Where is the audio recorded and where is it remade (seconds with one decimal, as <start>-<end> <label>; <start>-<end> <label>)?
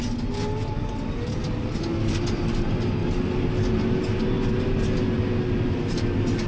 0.0-6.5 recorded